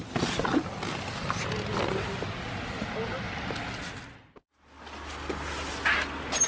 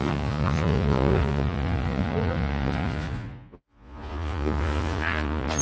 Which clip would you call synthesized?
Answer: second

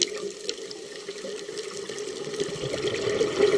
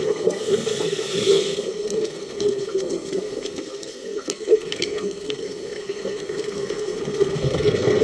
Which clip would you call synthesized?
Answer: second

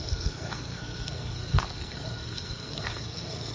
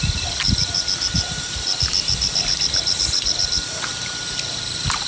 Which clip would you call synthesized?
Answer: first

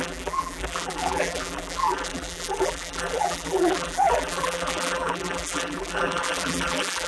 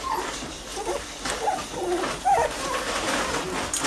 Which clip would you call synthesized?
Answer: first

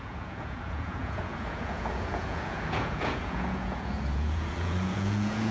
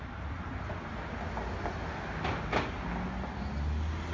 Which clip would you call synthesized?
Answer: first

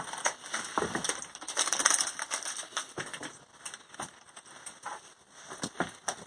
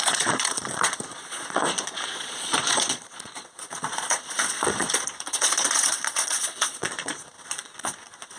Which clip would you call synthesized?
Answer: second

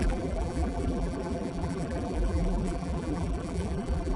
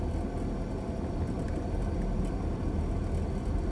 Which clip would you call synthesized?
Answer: first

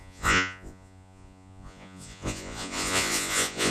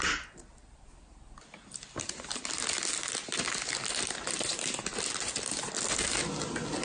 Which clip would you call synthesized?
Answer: first